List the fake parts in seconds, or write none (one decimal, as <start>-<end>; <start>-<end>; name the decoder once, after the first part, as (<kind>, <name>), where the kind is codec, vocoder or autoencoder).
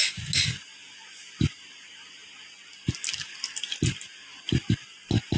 none